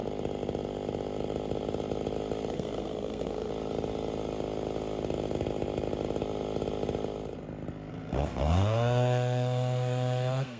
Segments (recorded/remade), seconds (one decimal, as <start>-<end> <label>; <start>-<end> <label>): 0.0-2.5 recorded; 2.5-3.5 remade; 3.5-7.9 recorded; 7.9-10.6 remade